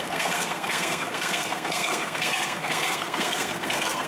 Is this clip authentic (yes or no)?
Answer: no